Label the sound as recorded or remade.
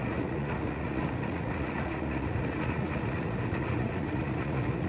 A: remade